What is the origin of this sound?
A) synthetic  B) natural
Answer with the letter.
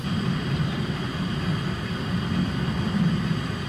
B